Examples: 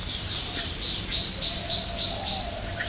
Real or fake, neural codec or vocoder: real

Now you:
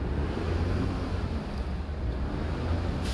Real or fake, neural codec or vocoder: real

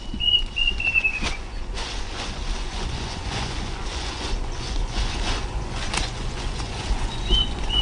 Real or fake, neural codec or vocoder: fake, vocoder, Vocos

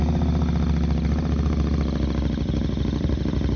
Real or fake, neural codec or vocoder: real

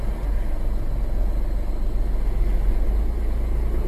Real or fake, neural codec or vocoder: real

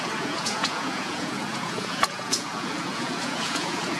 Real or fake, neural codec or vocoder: fake, vocoder, Vocos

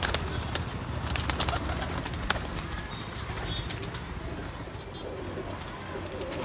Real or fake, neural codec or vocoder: real